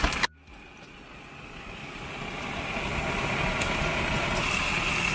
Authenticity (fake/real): real